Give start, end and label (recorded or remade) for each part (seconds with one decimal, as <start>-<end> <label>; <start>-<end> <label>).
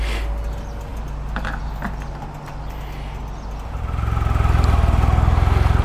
0.0-5.8 recorded